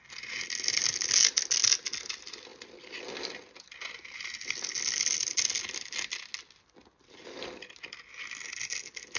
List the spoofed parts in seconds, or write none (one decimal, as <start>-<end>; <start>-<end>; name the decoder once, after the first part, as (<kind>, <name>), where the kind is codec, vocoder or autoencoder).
none